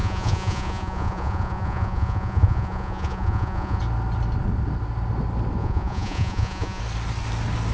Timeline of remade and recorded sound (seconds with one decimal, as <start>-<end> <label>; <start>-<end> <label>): 0.0-3.8 remade; 3.8-5.6 recorded; 5.6-6.8 remade; 6.8-7.7 recorded